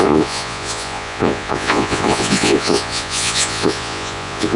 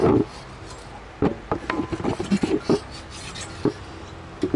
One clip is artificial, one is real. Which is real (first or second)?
second